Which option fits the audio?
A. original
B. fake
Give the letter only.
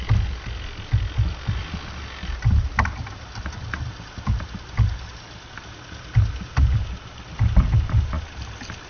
A